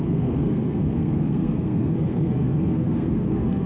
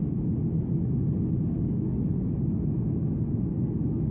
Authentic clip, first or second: second